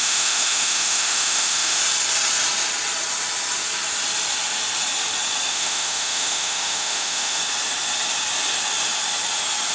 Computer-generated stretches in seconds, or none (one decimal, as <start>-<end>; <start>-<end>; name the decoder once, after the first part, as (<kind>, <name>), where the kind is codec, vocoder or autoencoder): 0.0-1.8 (autoencoder, DAC-VAE); 5.5-7.4